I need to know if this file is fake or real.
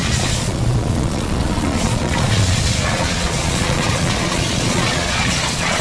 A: fake